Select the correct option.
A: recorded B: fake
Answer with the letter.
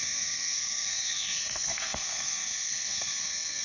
B